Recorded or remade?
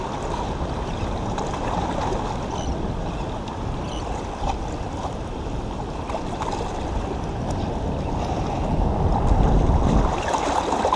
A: recorded